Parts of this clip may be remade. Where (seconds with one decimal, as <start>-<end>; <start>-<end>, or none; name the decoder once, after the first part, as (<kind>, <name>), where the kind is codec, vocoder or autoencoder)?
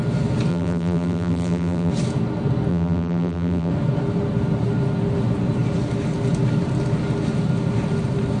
0.5-1.9 (vocoder, BigVGAN v2); 2.7-3.7